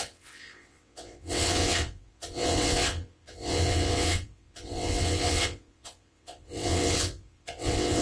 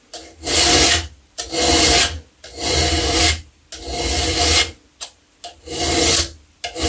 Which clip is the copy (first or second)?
first